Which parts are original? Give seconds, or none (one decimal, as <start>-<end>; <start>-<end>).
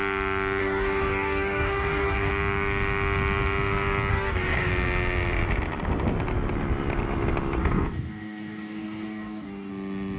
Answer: 0.0-0.6; 2.3-4.1; 4.7-7.6; 9.7-10.2